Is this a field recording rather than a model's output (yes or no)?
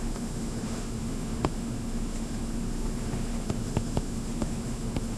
no